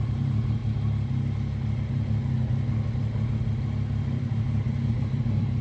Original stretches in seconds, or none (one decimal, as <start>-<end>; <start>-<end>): 0.6-4.0